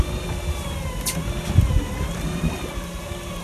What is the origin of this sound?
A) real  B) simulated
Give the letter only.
A